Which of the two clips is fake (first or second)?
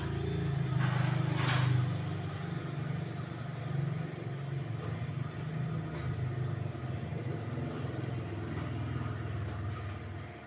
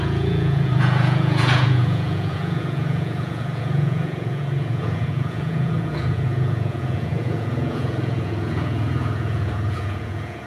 second